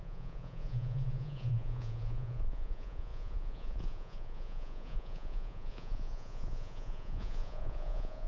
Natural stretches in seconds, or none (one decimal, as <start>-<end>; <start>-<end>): none